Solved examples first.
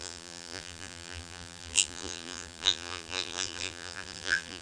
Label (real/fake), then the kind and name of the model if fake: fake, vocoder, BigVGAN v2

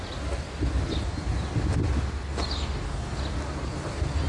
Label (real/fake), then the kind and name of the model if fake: real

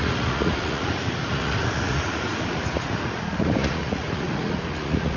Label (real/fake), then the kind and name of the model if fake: fake, vocoder, Vocos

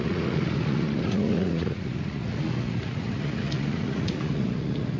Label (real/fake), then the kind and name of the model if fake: fake, vocoder, Vocos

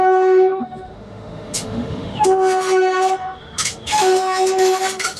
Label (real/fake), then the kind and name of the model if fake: fake, autoencoder, DAC-VAE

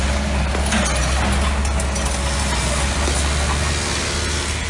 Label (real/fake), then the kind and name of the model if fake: real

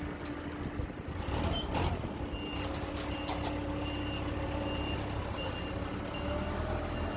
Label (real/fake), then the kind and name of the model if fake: real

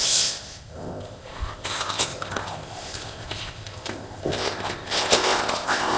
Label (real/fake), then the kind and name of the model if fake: fake, codec, ZipCodec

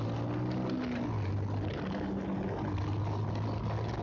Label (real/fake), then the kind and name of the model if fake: real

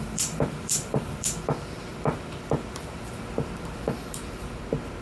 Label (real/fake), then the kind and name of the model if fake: fake, vocoder, BigVGAN v2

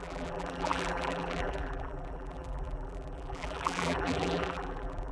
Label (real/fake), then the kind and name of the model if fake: fake, vocoder, BigVGAN v2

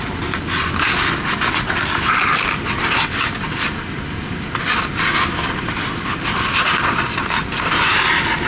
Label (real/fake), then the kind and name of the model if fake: real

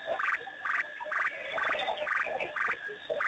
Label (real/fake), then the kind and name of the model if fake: real